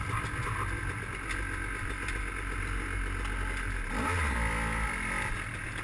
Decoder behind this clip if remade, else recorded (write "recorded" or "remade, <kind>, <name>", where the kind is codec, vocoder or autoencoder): recorded